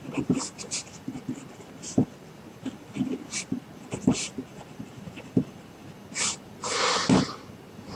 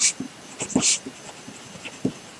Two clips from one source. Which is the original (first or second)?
second